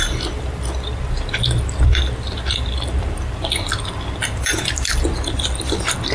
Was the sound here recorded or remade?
remade